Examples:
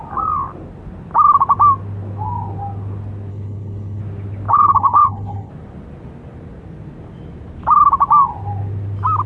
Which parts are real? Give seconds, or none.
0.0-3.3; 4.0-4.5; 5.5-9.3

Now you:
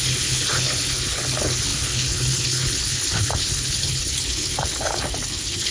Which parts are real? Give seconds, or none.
none

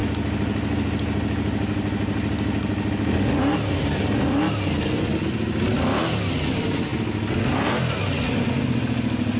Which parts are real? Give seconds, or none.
0.0-9.4

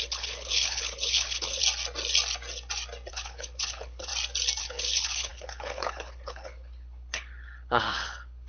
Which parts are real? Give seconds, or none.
1.6-3.1; 4.1-4.6